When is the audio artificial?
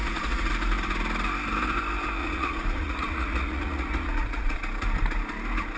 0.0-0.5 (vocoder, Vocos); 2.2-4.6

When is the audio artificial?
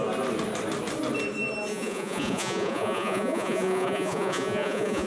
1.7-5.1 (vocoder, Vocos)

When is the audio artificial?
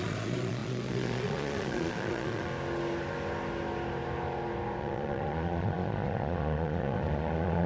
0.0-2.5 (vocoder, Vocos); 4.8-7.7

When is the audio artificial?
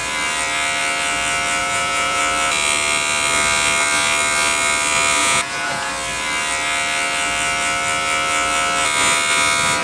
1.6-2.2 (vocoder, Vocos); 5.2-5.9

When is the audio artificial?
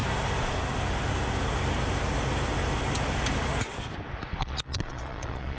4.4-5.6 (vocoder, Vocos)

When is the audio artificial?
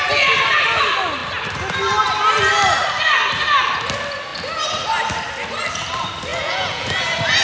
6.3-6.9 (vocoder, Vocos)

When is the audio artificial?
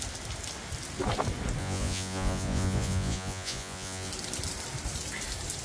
1.6-4.1 (vocoder, Vocos)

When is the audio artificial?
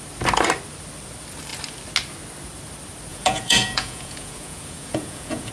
3.1-5.5 (vocoder, Vocos)